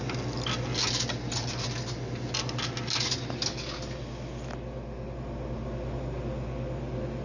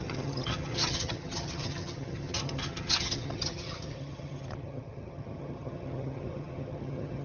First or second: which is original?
first